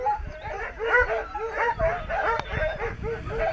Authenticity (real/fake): real